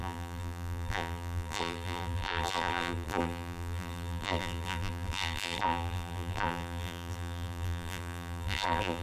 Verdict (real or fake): fake